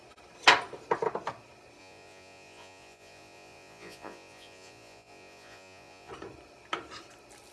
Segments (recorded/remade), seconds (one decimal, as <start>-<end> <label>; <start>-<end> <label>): 0.0-1.8 recorded; 1.8-6.1 remade; 6.1-7.5 recorded